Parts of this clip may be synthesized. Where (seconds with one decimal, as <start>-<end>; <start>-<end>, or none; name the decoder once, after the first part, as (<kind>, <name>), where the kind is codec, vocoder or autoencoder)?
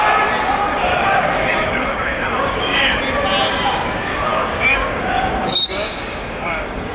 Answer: 0.9-2.9 (codec, DAC); 4.3-6.9